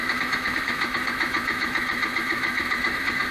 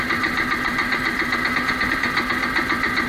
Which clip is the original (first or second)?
second